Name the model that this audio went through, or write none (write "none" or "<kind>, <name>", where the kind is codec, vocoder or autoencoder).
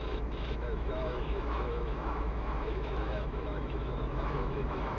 autoencoder, DAC-VAE